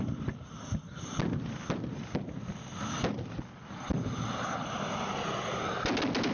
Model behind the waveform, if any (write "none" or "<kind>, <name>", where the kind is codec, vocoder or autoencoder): none